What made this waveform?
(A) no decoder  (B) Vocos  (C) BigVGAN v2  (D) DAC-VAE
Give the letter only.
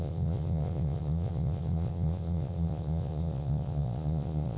B